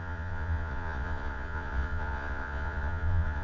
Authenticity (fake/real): fake